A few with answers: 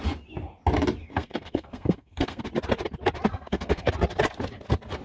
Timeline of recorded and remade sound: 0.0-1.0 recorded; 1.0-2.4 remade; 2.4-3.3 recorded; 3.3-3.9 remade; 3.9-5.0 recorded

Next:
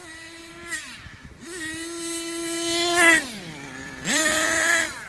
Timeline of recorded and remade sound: 0.0-3.8 recorded; 3.8-5.1 remade

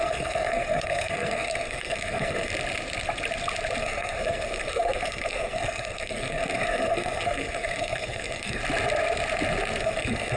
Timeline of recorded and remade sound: 0.0-2.5 remade; 2.5-3.8 recorded; 3.8-8.6 remade; 8.6-9.8 recorded; 9.8-10.4 remade